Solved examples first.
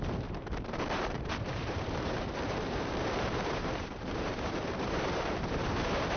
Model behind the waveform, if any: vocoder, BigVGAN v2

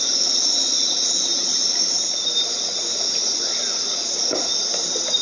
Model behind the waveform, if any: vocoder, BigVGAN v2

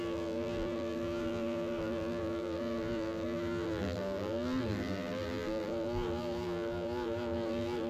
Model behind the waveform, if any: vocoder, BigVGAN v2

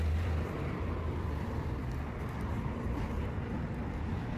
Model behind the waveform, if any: none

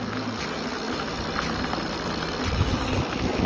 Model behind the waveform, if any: none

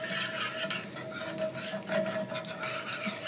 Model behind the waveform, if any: none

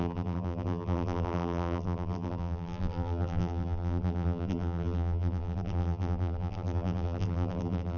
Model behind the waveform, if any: vocoder, BigVGAN v2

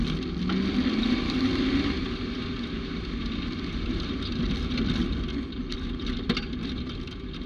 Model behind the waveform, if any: none